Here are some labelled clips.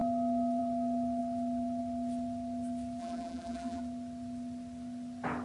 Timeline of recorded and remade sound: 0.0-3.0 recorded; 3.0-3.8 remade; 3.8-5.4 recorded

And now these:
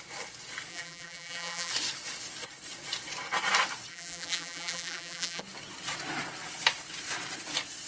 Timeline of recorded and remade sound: 0.0-0.7 recorded; 0.7-1.7 remade; 1.7-3.9 recorded; 3.9-5.4 remade; 5.4-7.9 recorded

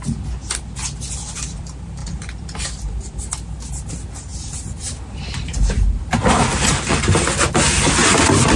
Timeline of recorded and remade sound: 0.0-8.6 recorded

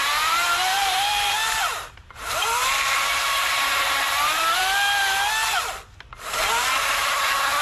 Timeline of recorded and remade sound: 0.0-4.6 remade; 4.6-7.6 recorded